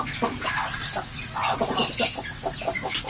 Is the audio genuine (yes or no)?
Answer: yes